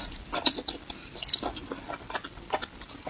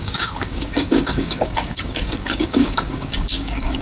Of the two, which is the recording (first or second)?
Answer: first